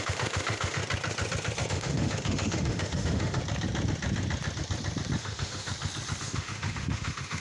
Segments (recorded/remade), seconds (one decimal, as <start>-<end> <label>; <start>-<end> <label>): 0.0-0.8 remade; 0.8-1.7 recorded; 1.7-3.4 remade; 3.4-5.2 recorded; 5.2-5.7 remade; 5.7-6.2 recorded; 6.2-7.4 remade